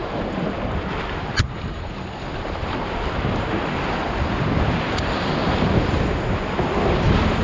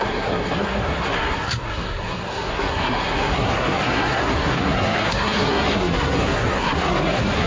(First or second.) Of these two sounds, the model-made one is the second